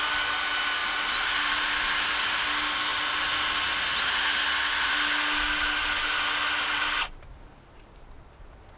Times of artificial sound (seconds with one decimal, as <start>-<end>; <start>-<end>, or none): none